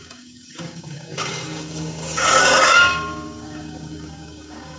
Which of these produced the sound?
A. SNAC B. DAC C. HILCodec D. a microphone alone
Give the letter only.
B